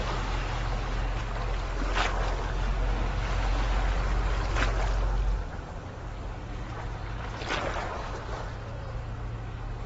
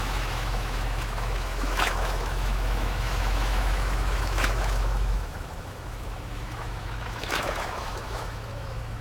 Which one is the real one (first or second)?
first